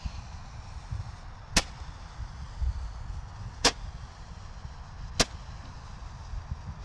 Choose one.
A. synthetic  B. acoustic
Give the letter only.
B